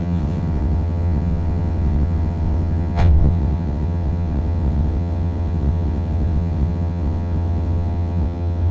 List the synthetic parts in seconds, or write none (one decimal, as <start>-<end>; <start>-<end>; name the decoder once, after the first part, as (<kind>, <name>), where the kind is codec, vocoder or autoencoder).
0.0-8.7 (vocoder, WaveNeXt)